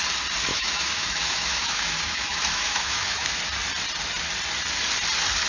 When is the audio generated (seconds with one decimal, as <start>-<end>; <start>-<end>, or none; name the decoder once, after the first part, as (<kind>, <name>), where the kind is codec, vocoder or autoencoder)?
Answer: 0.5-3.4 (autoencoder, DAC-VAE)